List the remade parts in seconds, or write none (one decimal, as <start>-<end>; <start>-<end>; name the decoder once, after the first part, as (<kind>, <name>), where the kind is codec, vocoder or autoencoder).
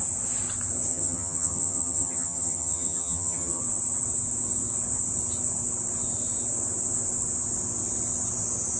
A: 0.9-3.6 (vocoder, HiFi-GAN)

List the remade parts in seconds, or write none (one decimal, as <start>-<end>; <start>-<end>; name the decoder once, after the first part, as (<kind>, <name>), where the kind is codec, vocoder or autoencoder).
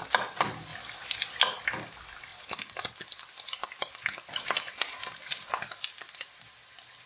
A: none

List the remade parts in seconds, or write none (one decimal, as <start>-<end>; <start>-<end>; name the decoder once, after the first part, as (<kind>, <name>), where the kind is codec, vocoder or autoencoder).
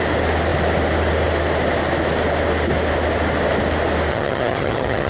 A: 4.1-5.1 (vocoder, HiFi-GAN)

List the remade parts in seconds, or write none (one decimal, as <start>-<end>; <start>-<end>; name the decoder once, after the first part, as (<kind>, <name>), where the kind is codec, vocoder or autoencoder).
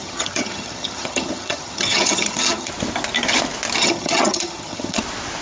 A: 0.0-2.7 (vocoder, HiFi-GAN); 3.8-5.0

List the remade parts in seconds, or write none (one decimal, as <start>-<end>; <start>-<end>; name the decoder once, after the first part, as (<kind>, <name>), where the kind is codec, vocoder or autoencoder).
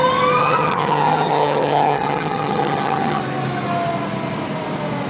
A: 0.4-3.2 (vocoder, HiFi-GAN)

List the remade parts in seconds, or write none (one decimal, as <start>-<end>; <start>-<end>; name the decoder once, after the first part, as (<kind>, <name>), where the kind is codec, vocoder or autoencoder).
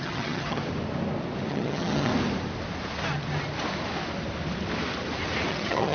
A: 0.0-0.6 (vocoder, HiFi-GAN); 1.5-2.1; 5.5-5.9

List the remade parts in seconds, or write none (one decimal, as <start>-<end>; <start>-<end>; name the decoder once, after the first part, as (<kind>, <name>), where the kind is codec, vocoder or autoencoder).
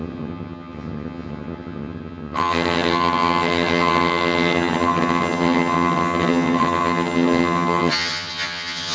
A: 0.0-8.9 (vocoder, HiFi-GAN)